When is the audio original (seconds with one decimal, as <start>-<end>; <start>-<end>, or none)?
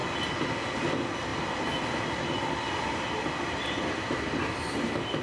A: 0.0-5.2